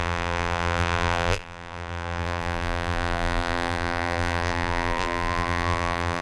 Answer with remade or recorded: remade